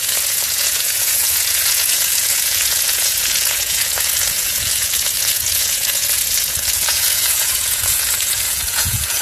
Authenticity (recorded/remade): remade